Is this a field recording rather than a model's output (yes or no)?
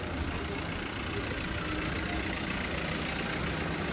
yes